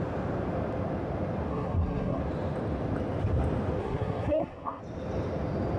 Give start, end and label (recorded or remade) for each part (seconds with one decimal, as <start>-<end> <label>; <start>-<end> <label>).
0.0-1.5 recorded; 1.5-2.2 remade; 2.2-3.8 recorded; 3.8-4.8 remade; 4.8-5.8 recorded